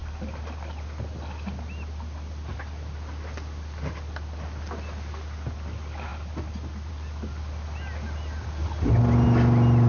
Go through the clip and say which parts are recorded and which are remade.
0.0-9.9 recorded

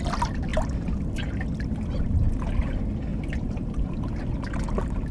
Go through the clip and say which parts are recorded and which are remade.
0.0-0.5 recorded; 0.5-2.4 remade; 2.4-3.1 recorded; 3.1-4.2 remade; 4.2-5.1 recorded

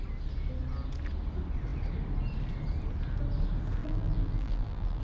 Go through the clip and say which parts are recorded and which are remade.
0.0-3.8 recorded; 3.8-5.0 remade

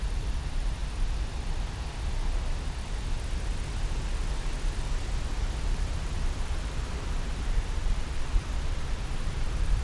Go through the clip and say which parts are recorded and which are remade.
0.0-0.8 remade; 0.8-5.6 recorded; 5.6-9.8 remade